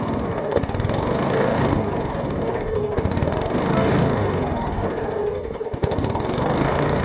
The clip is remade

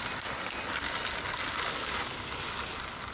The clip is recorded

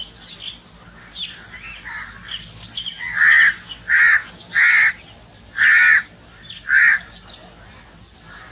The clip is recorded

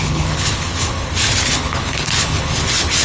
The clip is remade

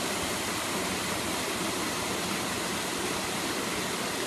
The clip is recorded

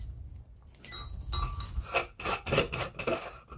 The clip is recorded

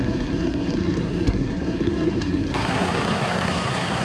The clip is remade